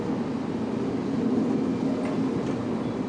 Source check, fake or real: real